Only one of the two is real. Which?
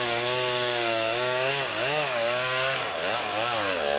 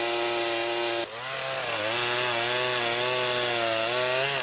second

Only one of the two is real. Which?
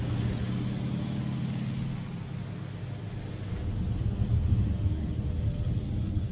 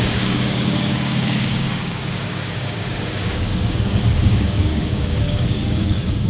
first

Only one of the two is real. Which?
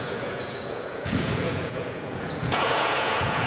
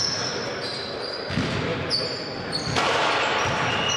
second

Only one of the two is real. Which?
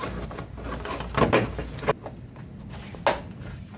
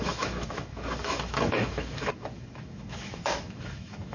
first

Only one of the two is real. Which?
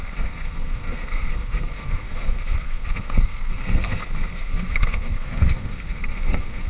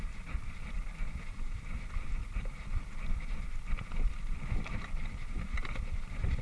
second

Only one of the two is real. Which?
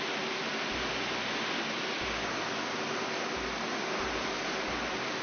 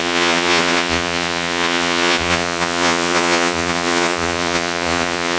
first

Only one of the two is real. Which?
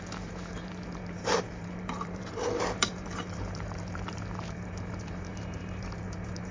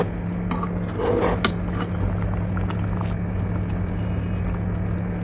second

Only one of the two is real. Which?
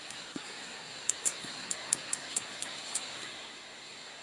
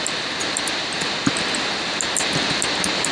second